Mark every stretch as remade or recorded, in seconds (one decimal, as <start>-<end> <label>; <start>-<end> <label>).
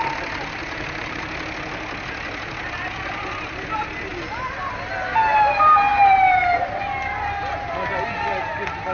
0.0-0.6 recorded; 0.6-1.2 remade; 1.2-5.9 recorded; 5.9-7.7 remade; 7.7-8.9 recorded